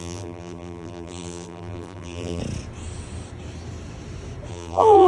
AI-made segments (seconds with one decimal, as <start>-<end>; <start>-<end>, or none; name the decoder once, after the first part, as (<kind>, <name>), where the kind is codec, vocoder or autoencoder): 0.0-2.4 (vocoder, BigVGAN v2); 4.5-5.1